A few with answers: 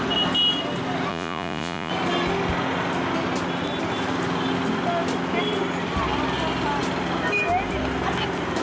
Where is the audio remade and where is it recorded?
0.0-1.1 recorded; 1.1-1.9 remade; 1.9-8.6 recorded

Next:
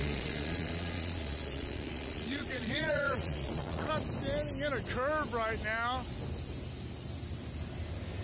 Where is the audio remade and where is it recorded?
0.0-3.9 remade; 3.9-8.2 recorded

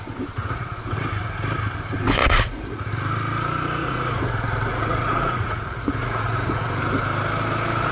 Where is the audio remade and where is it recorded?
0.0-0.4 recorded; 0.4-1.0 remade; 1.0-2.2 recorded; 2.2-2.9 remade; 2.9-3.8 recorded; 3.8-6.6 remade; 6.6-7.9 recorded